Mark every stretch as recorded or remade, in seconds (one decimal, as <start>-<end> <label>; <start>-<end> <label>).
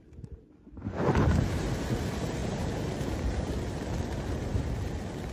0.0-2.4 recorded; 2.4-3.5 remade; 3.5-5.3 recorded